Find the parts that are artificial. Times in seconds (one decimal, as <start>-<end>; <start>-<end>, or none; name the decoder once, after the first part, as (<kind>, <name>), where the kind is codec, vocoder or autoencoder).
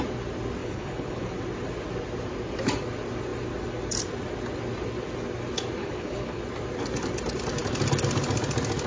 0.6-1.3 (codec, HILCodec); 5.8-6.4